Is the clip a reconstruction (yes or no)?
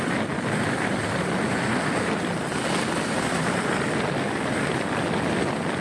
no